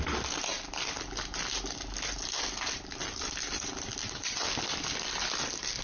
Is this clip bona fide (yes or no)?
yes